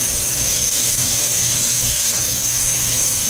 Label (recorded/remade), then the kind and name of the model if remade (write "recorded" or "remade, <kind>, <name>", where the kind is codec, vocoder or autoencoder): remade, codec, DAC